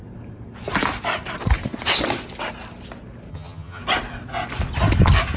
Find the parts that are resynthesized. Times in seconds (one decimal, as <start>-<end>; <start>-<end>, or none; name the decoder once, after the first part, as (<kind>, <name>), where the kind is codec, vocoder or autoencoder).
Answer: 3.3-3.8 (vocoder, HiFi-GAN)